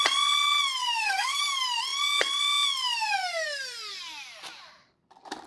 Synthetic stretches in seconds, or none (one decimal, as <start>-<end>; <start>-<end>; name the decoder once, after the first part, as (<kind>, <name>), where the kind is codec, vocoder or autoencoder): 0.8-1.4 (codec, SNAC)